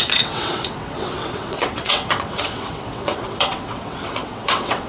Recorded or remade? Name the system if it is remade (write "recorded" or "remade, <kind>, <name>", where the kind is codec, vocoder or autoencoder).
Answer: remade, vocoder, WaveNeXt